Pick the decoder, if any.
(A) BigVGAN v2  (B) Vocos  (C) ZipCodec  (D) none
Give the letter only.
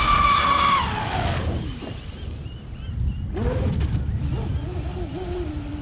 D